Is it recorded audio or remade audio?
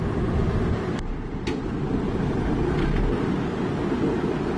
recorded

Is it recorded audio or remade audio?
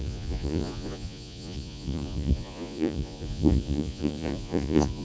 remade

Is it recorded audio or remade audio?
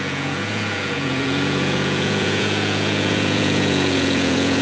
remade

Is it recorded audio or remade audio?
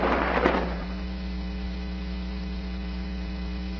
remade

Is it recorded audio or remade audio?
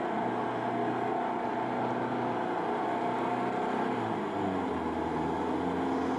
recorded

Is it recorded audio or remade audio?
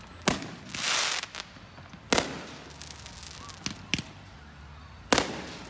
recorded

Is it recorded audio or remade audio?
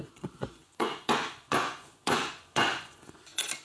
remade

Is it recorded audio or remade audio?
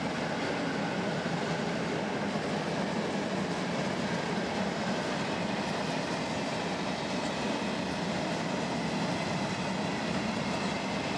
recorded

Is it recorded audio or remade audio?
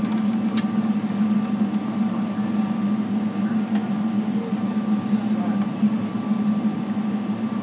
recorded